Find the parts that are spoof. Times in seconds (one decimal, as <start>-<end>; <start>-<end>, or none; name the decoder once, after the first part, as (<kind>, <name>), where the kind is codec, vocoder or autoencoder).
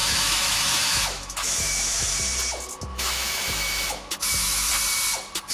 0.0-2.2 (autoencoder, DAC-VAE); 2.9-4.7